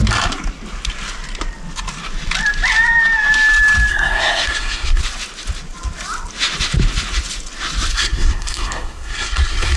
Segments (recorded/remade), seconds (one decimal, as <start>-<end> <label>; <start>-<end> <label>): 0.0-3.9 recorded; 3.9-5.0 remade; 5.0-7.9 recorded; 7.9-9.8 remade